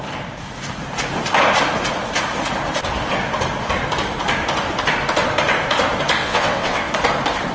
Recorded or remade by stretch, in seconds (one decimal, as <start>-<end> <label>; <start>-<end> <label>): 0.0-6.2 recorded; 6.2-6.9 remade; 6.9-7.5 recorded